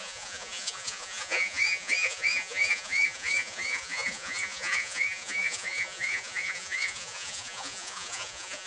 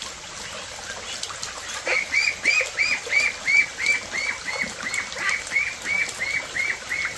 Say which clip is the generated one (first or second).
first